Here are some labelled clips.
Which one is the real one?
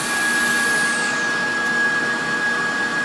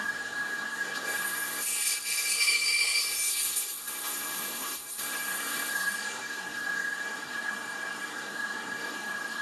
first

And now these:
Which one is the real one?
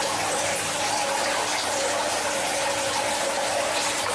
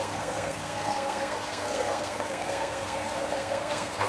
first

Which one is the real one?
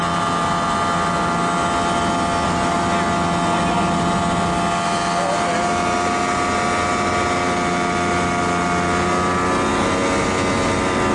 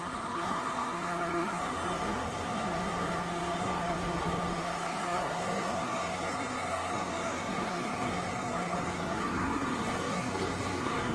first